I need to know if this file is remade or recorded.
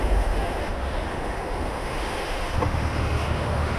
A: remade